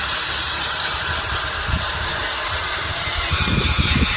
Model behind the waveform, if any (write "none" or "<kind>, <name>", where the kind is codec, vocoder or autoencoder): vocoder, BigVGAN v2